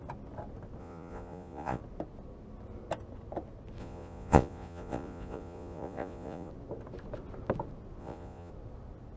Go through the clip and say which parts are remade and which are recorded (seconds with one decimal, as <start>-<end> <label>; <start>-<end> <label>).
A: 0.0-0.8 recorded; 0.8-1.8 remade; 1.8-3.8 recorded; 3.8-6.5 remade; 6.5-8.0 recorded; 8.0-8.5 remade; 8.5-9.2 recorded